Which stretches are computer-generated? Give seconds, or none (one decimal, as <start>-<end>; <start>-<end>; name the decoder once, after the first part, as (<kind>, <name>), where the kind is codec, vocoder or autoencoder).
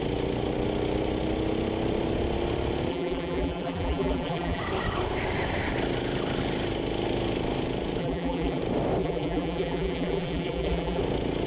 2.9-4.6 (vocoder, BigVGAN v2); 8.0-8.6; 9.0-11.0